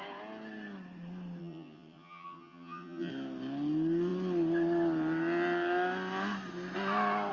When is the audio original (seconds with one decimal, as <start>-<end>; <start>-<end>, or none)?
0.0-1.4; 3.1-7.3